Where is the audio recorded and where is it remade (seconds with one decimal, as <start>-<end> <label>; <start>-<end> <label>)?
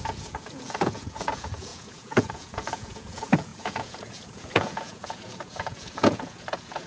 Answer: 0.0-6.9 remade